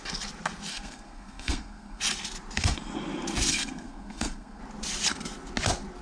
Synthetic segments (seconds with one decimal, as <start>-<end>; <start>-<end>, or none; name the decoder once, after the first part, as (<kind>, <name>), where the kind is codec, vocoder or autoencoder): 0.7-2.0 (codec, SNAC); 3.5-4.6